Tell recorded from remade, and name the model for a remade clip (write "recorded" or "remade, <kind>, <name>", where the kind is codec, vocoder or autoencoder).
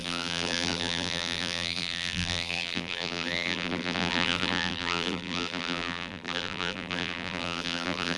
remade, vocoder, BigVGAN v2